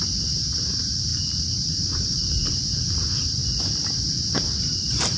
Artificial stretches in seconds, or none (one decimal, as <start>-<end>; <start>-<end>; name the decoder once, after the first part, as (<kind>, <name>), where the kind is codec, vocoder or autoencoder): 0.0-3.4 (vocoder, BigVGAN v2); 4.0-5.2